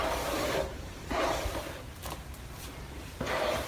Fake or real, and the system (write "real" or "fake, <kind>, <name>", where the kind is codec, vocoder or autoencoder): fake, vocoder, BigVGAN v2